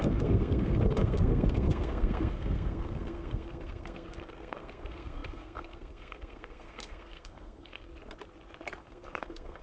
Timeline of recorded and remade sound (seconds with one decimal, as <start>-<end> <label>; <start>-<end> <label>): 0.0-7.9 remade; 7.9-8.8 recorded; 8.8-9.6 remade